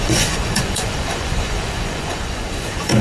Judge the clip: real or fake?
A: fake